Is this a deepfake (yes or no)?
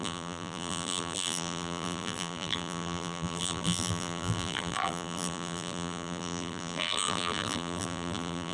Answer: yes